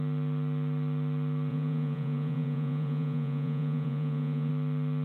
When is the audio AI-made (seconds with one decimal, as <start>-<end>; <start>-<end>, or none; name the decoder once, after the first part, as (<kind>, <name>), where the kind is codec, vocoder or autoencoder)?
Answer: 1.5-4.5 (vocoder, Vocos)